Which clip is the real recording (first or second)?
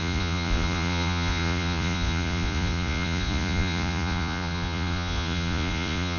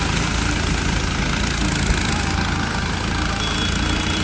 second